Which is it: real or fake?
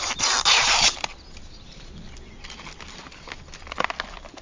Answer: real